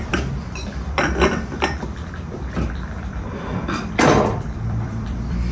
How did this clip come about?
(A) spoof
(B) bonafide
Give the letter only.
A